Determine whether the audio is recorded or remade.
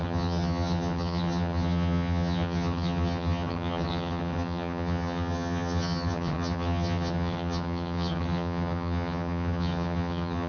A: remade